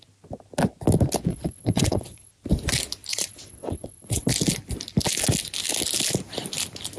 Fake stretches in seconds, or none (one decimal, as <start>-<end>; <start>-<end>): 1.3-2.3; 3.1-4.3